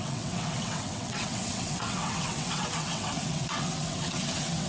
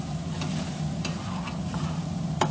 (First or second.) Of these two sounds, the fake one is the first